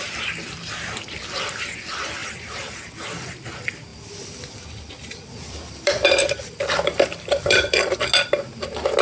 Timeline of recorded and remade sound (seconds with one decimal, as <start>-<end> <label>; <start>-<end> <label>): 0.0-2.2 recorded; 2.2-3.3 remade; 3.3-3.9 recorded; 3.9-8.0 remade; 8.0-9.0 recorded